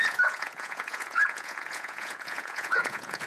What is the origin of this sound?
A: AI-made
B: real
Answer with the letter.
A